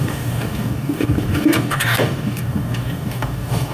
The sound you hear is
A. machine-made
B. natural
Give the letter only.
A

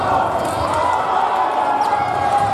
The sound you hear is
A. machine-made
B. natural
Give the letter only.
B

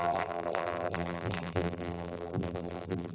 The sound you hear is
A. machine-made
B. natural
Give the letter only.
A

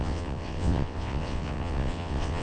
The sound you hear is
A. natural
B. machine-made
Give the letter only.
B